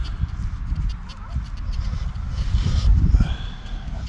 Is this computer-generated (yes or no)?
no